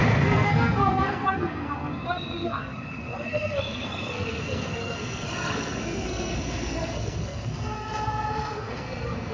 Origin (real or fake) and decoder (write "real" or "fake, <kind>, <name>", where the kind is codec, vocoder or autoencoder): fake, codec, SNAC